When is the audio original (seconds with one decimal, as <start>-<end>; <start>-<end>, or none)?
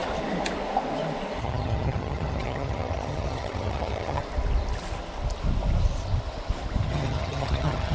0.0-1.4; 4.2-6.9